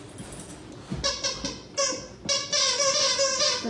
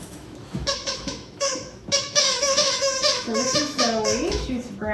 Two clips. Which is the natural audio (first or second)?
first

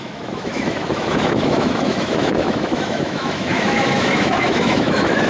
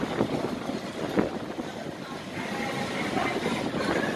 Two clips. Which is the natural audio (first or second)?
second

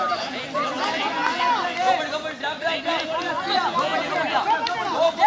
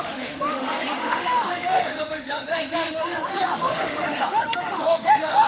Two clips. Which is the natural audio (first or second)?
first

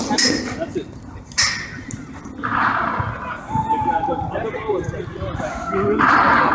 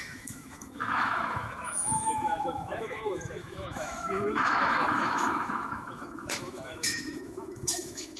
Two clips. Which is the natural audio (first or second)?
first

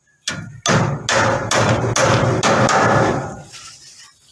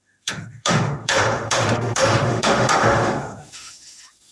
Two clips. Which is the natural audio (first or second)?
first